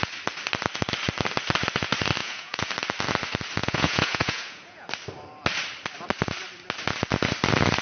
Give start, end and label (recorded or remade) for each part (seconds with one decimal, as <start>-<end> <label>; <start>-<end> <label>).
0.0-2.2 recorded; 2.2-2.7 remade; 2.7-3.6 recorded; 3.6-4.9 remade; 4.9-7.8 recorded